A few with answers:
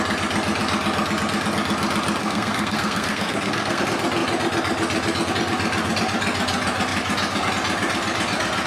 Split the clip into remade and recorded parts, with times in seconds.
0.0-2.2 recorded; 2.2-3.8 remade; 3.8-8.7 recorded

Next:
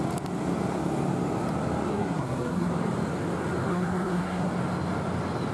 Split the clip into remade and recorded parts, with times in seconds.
0.0-1.9 recorded; 1.9-2.7 remade; 2.7-3.7 recorded; 3.7-4.5 remade; 4.5-5.5 recorded